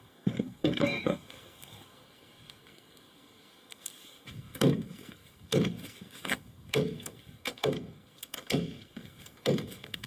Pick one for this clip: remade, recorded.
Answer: remade